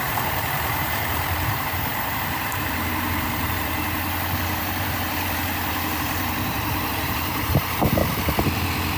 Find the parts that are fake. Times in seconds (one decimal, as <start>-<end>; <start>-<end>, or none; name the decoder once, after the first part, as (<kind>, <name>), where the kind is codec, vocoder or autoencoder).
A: 0.0-8.0 (vocoder, BigVGAN v2)